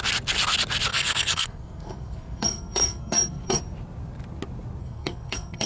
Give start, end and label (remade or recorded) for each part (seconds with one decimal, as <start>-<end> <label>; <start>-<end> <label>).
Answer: 0.0-0.9 recorded; 0.9-3.6 remade; 3.6-4.8 recorded; 4.8-5.7 remade